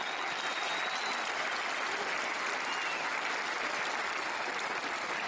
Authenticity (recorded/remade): recorded